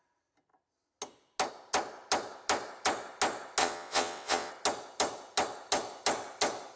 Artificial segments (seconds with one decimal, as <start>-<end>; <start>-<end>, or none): 3.6-4.5